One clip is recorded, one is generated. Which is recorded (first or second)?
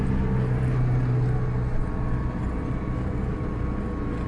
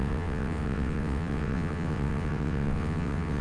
first